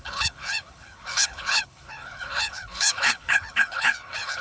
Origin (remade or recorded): remade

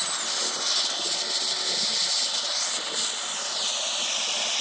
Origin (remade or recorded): recorded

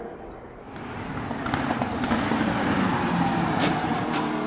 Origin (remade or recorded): recorded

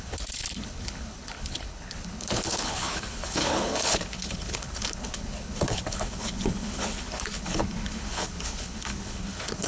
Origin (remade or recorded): remade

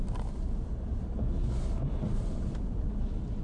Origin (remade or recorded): recorded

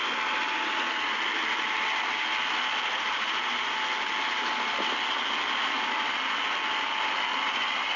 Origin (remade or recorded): recorded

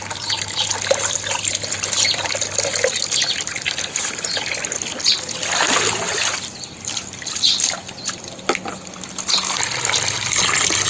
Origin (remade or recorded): recorded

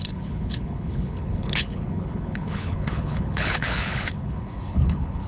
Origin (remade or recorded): remade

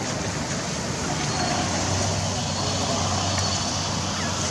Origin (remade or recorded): recorded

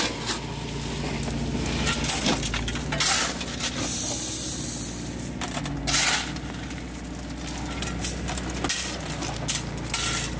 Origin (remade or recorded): recorded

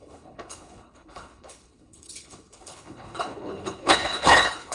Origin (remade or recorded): remade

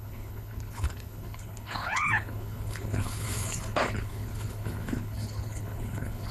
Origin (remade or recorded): remade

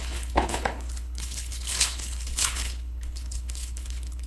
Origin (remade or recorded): remade